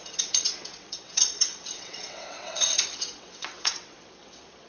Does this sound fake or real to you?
fake